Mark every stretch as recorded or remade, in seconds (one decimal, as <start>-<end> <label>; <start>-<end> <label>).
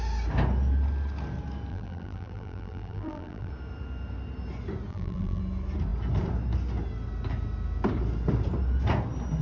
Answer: 0.0-1.7 recorded; 1.7-3.5 remade; 3.5-4.9 recorded; 4.9-5.4 remade; 5.4-9.4 recorded